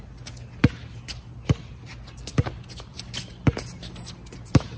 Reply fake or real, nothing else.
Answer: real